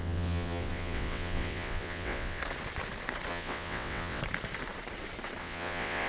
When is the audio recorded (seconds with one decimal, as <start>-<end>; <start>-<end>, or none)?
2.4-3.3; 4.2-5.4